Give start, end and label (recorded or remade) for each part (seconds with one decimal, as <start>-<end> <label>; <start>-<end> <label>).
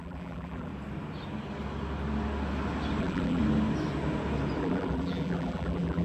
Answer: 0.0-0.7 remade; 0.7-3.0 recorded; 3.0-3.4 remade; 3.4-4.6 recorded; 4.6-6.0 remade